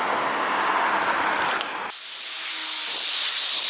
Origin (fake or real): real